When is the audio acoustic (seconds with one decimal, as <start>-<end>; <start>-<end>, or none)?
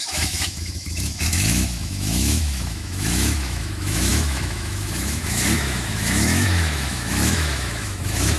none